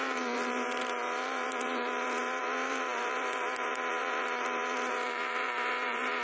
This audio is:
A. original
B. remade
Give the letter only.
B